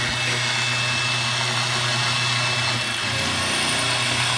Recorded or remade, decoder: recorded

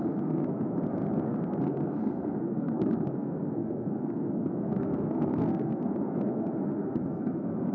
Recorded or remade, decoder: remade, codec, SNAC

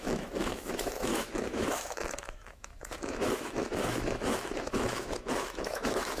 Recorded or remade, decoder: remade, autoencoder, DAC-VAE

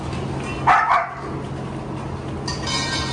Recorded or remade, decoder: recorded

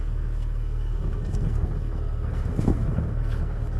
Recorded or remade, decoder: remade, codec, SNAC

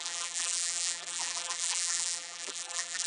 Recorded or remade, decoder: remade, vocoder, BigVGAN v2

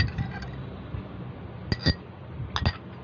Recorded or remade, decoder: recorded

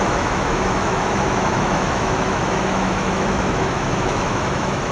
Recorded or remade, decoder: remade, autoencoder, DAC-VAE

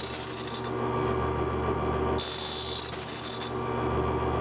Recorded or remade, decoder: recorded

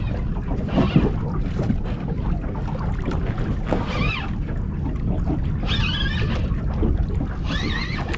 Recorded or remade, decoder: recorded